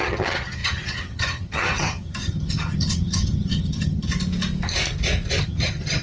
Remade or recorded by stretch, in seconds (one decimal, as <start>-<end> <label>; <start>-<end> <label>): 0.0-4.1 remade; 4.1-5.4 recorded; 5.4-6.0 remade